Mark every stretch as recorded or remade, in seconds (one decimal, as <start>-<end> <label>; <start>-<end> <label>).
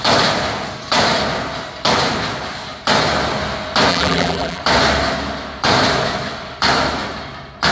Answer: 0.0-3.9 recorded; 3.9-4.6 remade; 4.6-7.7 recorded